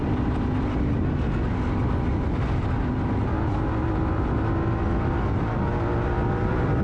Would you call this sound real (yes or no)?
yes